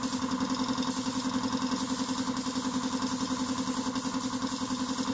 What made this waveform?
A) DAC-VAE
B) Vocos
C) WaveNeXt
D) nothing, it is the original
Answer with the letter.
D